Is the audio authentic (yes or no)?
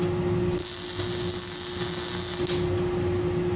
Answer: yes